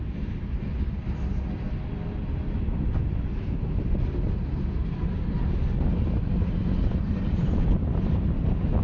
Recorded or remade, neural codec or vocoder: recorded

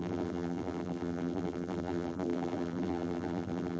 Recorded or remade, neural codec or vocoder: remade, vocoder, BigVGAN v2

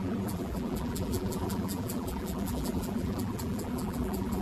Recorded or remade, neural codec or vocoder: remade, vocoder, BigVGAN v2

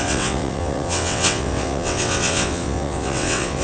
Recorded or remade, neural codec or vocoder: remade, vocoder, WaveNeXt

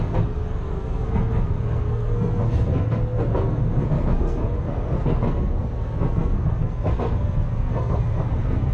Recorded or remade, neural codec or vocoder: remade, codec, SNAC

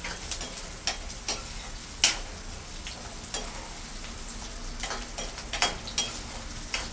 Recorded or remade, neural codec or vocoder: recorded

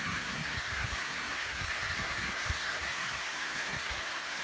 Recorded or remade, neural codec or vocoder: remade, codec, SNAC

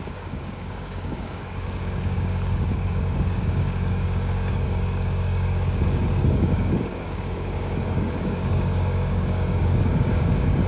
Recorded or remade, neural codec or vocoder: remade, codec, DAC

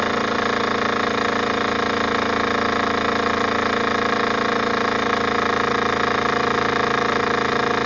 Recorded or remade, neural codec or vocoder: recorded